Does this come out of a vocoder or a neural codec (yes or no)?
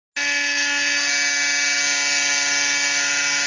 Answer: no